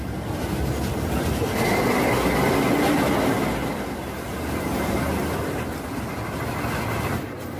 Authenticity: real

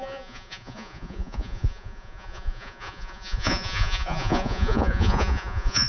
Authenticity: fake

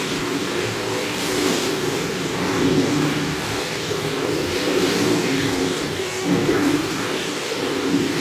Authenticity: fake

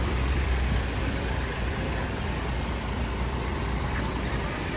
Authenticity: fake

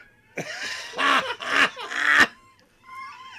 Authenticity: fake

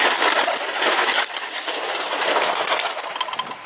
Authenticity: real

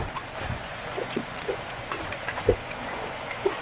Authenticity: fake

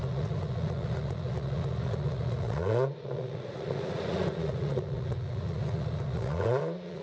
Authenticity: fake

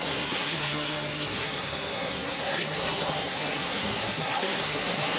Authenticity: fake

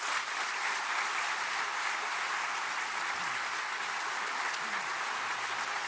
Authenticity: fake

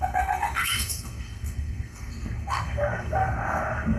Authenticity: fake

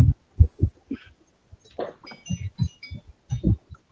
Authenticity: real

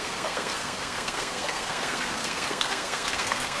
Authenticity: fake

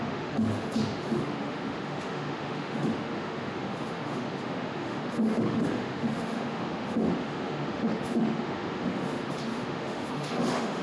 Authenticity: fake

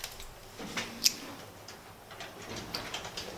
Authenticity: fake